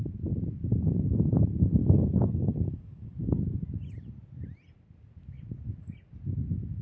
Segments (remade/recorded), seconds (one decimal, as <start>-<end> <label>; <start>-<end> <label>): 0.0-1.8 recorded; 1.8-3.4 remade; 3.4-6.8 recorded